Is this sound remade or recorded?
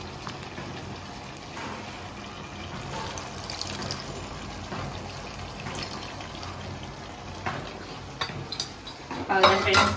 recorded